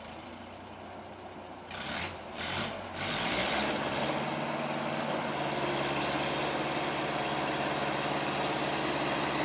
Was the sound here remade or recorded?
recorded